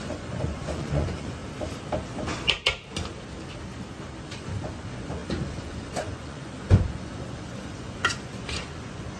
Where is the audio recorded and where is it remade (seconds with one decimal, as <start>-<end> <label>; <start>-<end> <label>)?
0.0-1.4 remade; 1.4-4.2 recorded; 4.2-9.2 remade

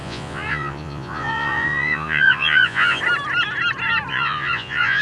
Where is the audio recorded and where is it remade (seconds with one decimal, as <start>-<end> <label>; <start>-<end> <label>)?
0.0-3.0 remade; 3.0-4.1 recorded; 4.1-5.0 remade

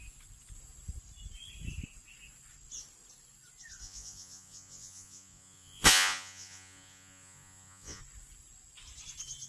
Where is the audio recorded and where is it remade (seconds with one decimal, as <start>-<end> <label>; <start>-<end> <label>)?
0.0-3.8 recorded; 3.8-8.0 remade; 8.0-9.5 recorded

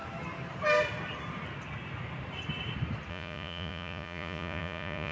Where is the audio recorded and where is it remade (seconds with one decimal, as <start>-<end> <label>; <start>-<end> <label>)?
0.0-3.1 recorded; 3.1-5.1 remade

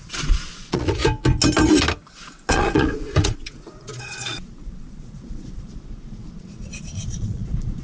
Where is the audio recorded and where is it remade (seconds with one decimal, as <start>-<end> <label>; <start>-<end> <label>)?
0.0-1.0 remade; 1.0-2.5 recorded; 2.5-7.8 remade

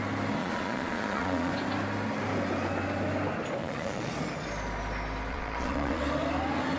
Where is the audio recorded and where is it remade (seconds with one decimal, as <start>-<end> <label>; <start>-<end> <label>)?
0.0-0.4 recorded; 0.4-1.5 remade; 1.5-3.6 recorded; 3.6-4.1 remade; 4.1-5.3 recorded; 5.3-6.0 remade; 6.0-6.8 recorded

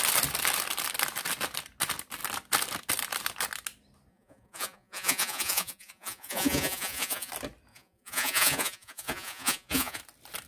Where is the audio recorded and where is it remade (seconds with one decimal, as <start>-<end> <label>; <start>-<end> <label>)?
0.0-4.1 recorded; 4.1-7.3 remade; 7.3-7.7 recorded; 7.7-10.0 remade; 10.0-10.5 recorded

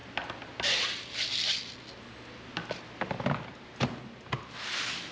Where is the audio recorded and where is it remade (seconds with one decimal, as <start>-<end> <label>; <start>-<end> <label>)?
0.0-5.1 recorded